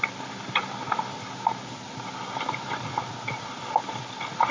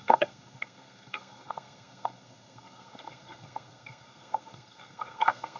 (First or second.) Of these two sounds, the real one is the first